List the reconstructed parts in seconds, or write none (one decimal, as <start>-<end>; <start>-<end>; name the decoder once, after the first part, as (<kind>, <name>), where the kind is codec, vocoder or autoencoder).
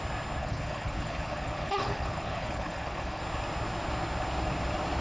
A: 0.4-3.2 (codec, HILCodec)